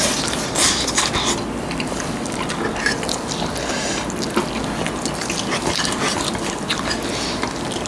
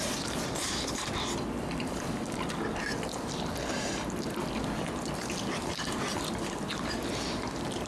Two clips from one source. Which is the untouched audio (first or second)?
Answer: first